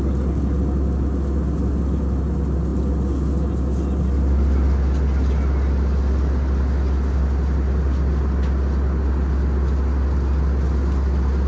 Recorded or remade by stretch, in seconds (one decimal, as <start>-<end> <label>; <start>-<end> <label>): 0.0-11.5 recorded